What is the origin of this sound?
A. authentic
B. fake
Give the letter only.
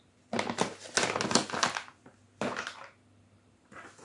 A